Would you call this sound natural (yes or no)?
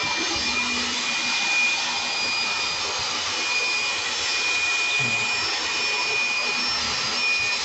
yes